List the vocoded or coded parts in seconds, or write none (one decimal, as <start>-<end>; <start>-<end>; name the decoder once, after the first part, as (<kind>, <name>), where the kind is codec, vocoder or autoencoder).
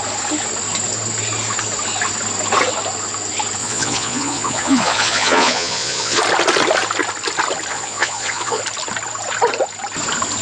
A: 3.6-6.2 (vocoder, Vocos); 7.7-8.6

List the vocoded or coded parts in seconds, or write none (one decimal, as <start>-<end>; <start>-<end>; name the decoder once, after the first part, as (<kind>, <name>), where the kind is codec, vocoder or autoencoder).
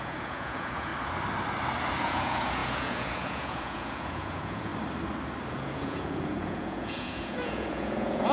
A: 0.0-0.9 (vocoder, Vocos); 2.0-4.7; 5.5-8.3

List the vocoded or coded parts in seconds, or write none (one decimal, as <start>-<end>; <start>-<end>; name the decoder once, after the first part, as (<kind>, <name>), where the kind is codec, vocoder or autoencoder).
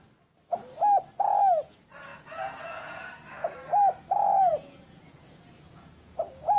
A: 2.1-3.0 (vocoder, Vocos); 4.3-6.6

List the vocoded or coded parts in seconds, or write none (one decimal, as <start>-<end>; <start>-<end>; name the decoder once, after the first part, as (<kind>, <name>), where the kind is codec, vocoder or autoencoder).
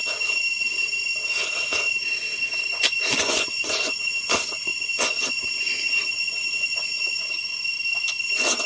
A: 3.2-7.6 (vocoder, Vocos); 8.2-8.7